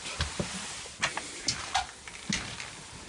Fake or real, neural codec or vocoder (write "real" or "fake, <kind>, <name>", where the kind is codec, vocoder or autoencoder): real